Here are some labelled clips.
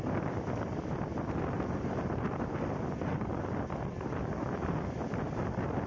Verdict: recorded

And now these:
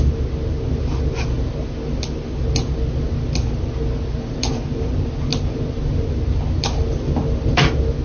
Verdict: recorded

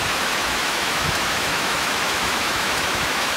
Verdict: remade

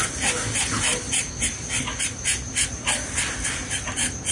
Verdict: recorded